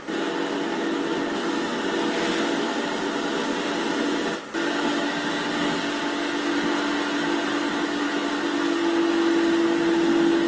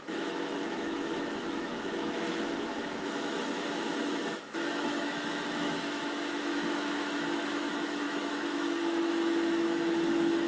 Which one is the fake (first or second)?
second